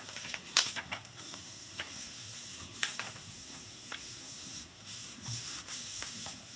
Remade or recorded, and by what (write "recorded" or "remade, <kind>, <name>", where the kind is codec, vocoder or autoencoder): remade, codec, SNAC